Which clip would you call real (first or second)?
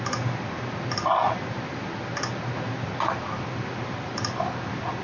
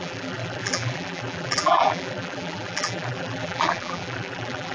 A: first